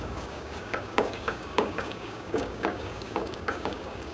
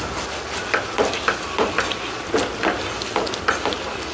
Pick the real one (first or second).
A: second